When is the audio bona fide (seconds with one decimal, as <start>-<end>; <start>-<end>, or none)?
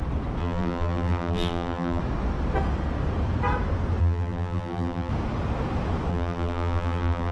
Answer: 0.0-0.4; 2.0-4.0; 5.1-6.1